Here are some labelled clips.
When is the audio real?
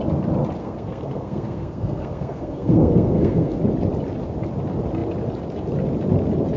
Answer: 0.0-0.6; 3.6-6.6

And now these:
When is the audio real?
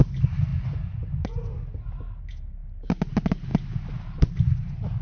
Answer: 0.0-5.0